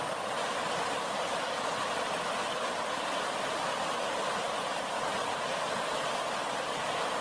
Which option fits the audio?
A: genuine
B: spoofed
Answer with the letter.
A